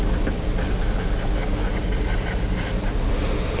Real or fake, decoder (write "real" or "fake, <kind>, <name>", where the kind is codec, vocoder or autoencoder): real